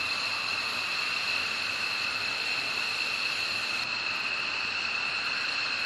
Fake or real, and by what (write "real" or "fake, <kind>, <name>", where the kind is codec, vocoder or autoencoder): fake, vocoder, BigVGAN v2